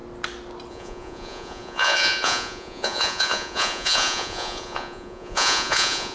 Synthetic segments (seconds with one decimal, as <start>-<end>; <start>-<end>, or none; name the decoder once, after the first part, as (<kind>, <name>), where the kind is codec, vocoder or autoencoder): 0.7-6.1 (vocoder, Vocos)